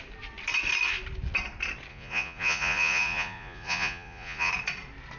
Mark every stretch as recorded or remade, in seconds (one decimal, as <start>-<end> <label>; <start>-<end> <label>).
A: 0.0-1.9 recorded; 1.9-4.5 remade; 4.5-5.2 recorded